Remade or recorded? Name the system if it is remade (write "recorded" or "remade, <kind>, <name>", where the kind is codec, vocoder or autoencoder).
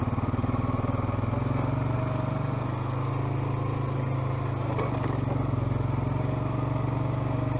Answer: recorded